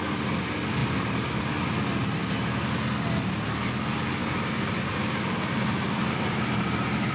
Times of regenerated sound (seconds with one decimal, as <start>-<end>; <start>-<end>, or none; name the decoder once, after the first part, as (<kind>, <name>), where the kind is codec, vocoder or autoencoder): 0.8-1.4 (vocoder, BigVGAN v2); 4.2-7.1